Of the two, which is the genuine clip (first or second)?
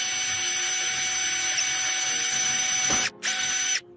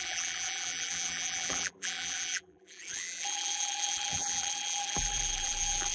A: first